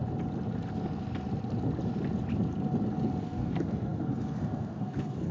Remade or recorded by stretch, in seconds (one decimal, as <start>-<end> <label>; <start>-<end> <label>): 0.0-3.2 recorded; 3.2-5.3 remade